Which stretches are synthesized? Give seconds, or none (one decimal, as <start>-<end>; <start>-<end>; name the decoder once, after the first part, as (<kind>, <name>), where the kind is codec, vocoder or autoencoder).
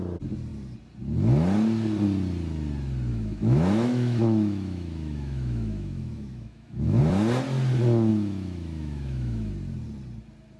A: 3.1-7.0 (autoencoder, DAC-VAE); 8.1-9.5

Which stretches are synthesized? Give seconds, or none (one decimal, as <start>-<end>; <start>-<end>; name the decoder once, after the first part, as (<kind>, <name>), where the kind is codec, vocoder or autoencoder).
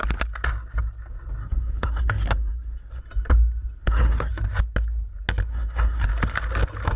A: 1.4-3.0 (codec, SNAC); 3.8-4.3; 5.5-6.1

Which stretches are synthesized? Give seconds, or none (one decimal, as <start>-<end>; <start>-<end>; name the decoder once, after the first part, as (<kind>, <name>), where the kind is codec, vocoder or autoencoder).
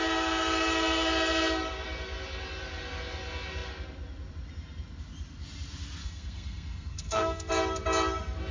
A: 6.0-7.5 (codec, SNAC)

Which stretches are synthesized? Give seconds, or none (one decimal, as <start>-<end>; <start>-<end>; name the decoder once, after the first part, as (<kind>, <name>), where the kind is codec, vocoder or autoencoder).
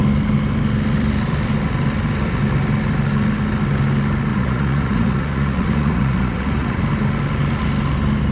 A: 4.3-6.8 (vocoder, Vocos)